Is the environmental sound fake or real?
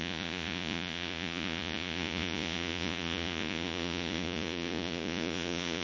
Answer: fake